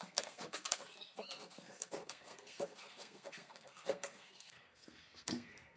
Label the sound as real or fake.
fake